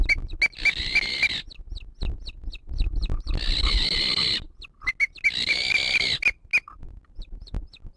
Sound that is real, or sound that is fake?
real